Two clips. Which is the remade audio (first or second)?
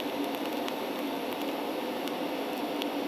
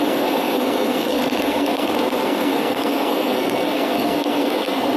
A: second